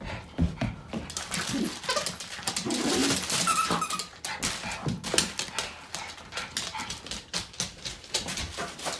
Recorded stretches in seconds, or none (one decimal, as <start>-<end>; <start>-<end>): 0.0-9.0